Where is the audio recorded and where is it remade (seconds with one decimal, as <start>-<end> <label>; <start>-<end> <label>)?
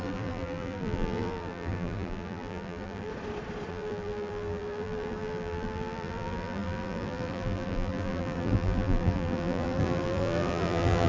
0.0-3.1 remade; 3.1-3.7 recorded; 3.7-11.1 remade